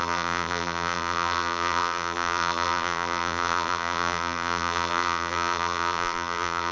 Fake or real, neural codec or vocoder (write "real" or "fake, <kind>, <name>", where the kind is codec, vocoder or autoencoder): fake, vocoder, BigVGAN v2